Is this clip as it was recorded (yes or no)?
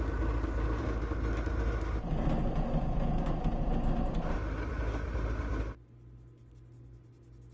yes